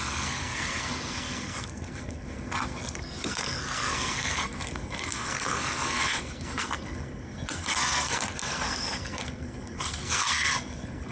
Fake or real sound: fake